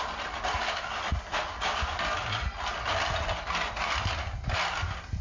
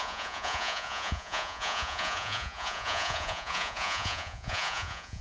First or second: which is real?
first